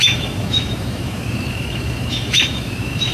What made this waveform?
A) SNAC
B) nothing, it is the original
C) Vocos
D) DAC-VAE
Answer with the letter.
D